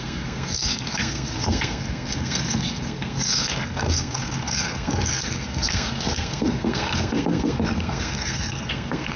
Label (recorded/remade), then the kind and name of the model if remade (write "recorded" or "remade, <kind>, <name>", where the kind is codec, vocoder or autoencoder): remade, codec, SNAC